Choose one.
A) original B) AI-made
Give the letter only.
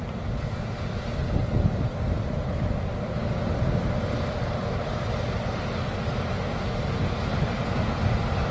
A